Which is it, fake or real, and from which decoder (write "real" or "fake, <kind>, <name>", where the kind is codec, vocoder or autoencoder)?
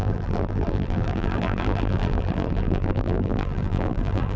fake, vocoder, BigVGAN v2